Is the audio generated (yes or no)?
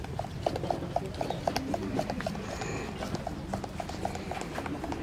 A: no